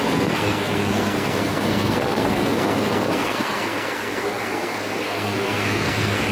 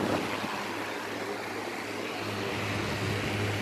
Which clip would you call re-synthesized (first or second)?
first